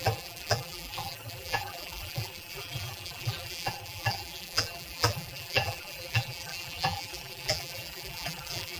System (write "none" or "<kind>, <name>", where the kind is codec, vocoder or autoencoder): vocoder, BigVGAN v2